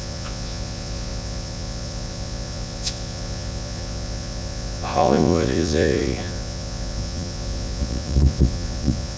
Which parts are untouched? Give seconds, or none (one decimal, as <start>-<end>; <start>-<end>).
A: none